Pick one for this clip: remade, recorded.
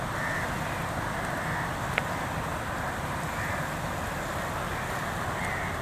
recorded